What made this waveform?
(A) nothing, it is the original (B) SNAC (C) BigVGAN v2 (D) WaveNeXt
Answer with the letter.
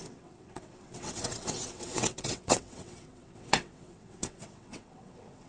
D